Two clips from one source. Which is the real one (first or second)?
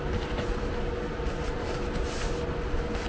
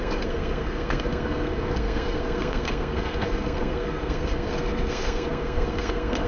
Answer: first